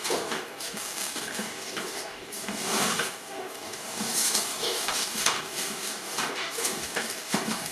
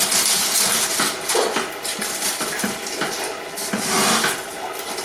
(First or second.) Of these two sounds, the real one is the second